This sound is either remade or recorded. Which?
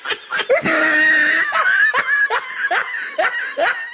recorded